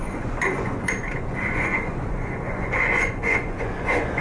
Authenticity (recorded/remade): remade